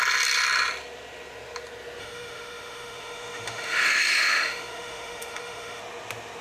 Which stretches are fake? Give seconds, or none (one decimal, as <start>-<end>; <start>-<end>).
2.0-5.8